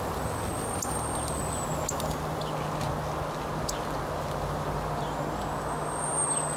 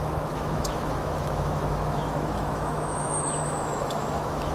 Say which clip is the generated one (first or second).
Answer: second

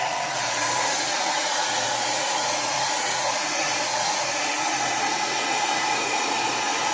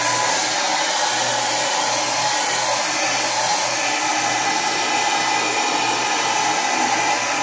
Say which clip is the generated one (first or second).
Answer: first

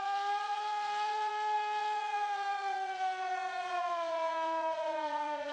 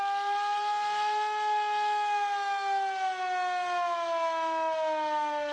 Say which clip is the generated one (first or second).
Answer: first